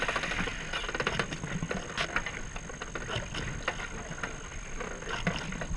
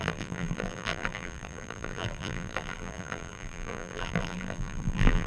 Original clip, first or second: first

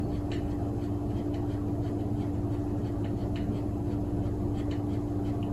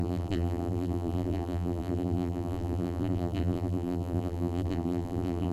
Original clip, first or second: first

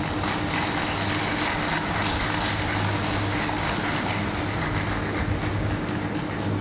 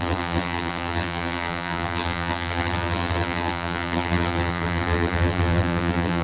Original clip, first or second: first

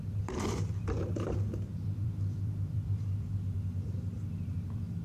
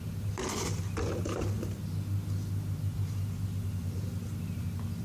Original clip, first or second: second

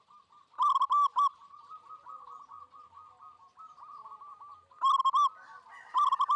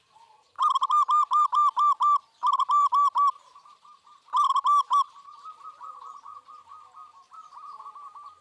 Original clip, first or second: first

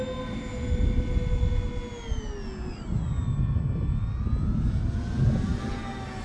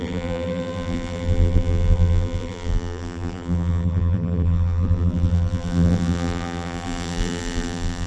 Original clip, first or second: first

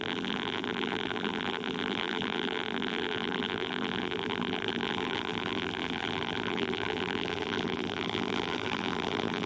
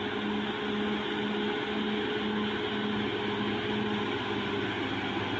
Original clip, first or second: second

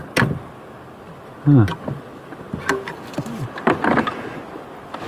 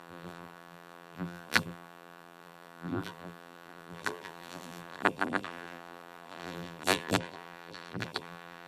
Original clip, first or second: first